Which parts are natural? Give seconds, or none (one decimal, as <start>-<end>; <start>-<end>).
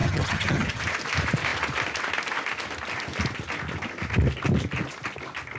0.8-5.6